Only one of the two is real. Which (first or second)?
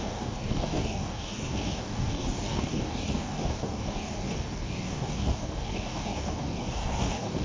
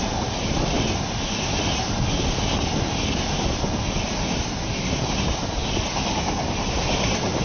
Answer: second